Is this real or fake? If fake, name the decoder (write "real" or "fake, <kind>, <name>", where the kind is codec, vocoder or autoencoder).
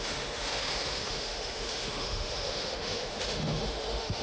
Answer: fake, autoencoder, DAC-VAE